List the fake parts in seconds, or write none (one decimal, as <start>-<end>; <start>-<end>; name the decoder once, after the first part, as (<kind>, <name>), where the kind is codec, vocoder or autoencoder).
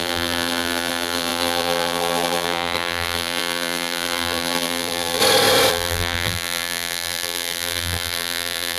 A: 0.0-5.2 (vocoder, BigVGAN v2); 5.7-8.8